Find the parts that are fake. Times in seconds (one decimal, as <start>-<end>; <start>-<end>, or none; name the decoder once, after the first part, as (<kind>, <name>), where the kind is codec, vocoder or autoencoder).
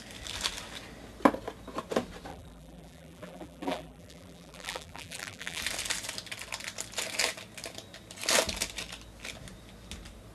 2.3-5.6 (vocoder, BigVGAN v2)